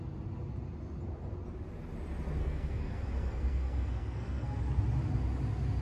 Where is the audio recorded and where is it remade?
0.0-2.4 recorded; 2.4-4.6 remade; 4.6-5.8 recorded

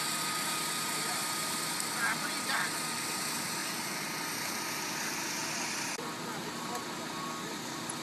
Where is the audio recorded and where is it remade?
0.0-8.0 recorded

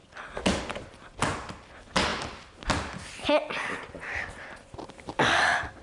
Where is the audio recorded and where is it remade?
0.0-5.8 recorded

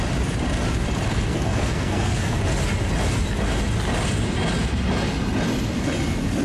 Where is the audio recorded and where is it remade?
0.0-1.1 recorded; 1.1-2.4 remade; 2.4-6.4 recorded

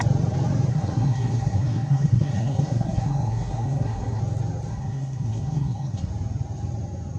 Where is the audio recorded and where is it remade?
0.0-0.7 recorded; 0.7-4.2 remade; 4.2-4.7 recorded; 4.7-6.1 remade; 6.1-7.2 recorded

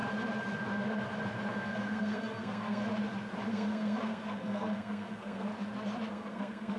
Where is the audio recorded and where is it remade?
0.0-1.5 recorded; 1.5-2.8 remade; 2.8-3.5 recorded; 3.5-5.5 remade; 5.5-6.1 recorded; 6.1-6.8 remade

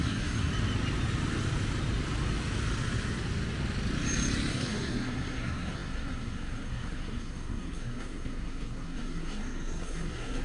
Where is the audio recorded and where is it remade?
0.0-0.5 remade; 0.5-4.5 recorded; 4.5-10.4 remade